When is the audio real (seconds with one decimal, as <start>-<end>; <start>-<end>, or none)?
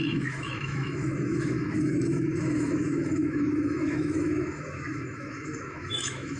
none